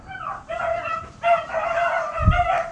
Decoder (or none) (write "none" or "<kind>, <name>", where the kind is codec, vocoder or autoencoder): none